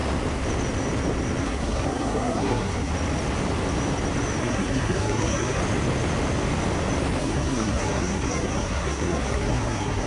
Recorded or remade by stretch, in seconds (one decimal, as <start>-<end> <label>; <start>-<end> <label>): 0.0-1.4 recorded; 1.4-2.9 remade; 2.9-4.4 recorded; 4.4-5.6 remade; 5.6-7.2 recorded; 7.2-10.1 remade